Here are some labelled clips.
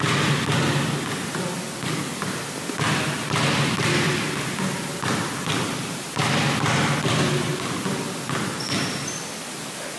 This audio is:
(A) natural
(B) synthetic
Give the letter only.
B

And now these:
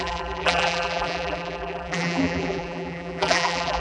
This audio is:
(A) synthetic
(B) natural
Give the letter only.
A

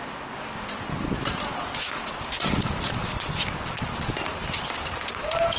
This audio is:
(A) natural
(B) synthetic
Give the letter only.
A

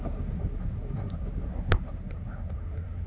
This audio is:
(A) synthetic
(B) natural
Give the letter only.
A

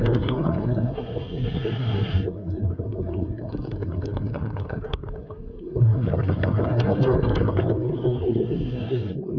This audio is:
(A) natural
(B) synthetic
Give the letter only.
B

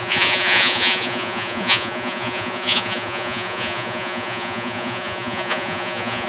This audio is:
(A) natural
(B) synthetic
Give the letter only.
B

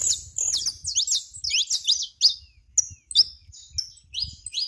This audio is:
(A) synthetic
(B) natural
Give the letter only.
B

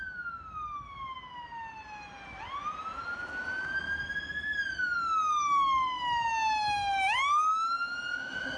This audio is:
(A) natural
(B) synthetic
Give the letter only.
A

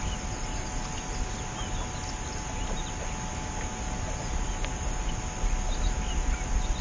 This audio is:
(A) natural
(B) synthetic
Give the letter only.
A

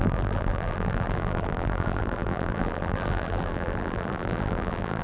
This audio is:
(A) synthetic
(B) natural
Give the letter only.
A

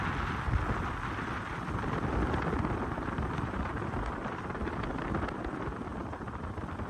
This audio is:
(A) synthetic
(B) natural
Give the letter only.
B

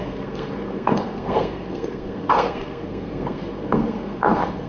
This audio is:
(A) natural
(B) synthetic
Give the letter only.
B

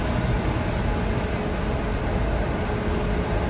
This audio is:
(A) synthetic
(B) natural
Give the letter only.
B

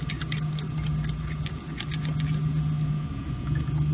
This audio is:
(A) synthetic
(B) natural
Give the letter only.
B